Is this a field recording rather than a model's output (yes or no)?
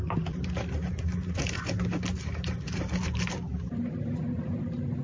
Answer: yes